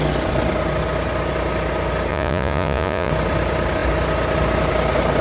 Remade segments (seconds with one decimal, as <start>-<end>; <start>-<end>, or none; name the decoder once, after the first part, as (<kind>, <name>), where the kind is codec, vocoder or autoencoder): 2.1-3.1 (vocoder, Vocos)